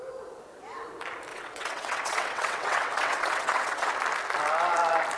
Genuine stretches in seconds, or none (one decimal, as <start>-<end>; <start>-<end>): 0.0-1.3; 3.9-5.2